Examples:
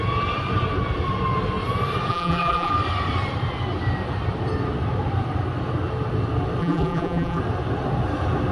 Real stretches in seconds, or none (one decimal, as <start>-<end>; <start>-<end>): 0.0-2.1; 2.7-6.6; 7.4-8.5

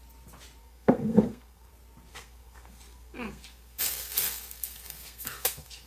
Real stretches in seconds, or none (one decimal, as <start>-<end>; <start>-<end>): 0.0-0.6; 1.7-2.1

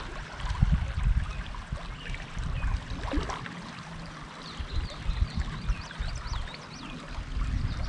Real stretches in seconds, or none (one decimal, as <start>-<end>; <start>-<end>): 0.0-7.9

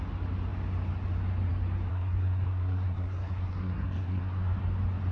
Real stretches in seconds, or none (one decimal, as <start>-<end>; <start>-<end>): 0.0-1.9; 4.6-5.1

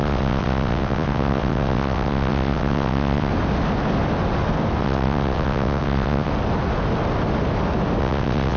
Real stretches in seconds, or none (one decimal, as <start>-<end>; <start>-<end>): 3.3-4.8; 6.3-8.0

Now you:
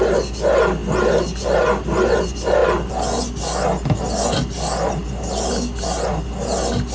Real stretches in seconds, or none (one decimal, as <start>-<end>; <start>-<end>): 0.0-6.9

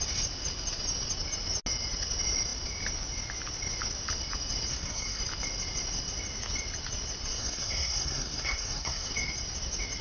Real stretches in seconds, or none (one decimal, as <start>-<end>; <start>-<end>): 0.0-4.7; 5.2-7.3; 9.1-10.0

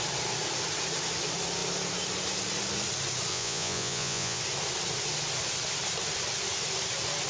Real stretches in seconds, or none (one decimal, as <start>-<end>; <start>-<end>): 0.0-3.3; 4.4-7.3